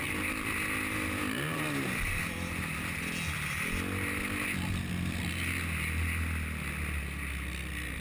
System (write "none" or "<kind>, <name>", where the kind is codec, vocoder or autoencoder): none